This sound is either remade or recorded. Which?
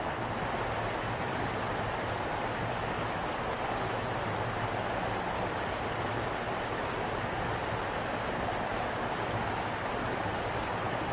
recorded